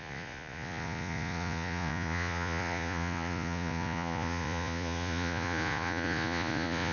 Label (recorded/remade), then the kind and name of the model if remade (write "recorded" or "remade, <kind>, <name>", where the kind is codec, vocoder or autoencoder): remade, vocoder, Vocos